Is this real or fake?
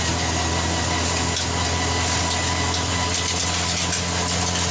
real